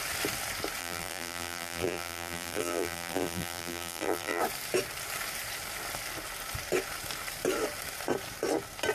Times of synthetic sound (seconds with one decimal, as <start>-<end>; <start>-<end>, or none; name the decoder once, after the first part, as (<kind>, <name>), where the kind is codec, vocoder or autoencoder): 0.8-4.4 (vocoder, BigVGAN v2)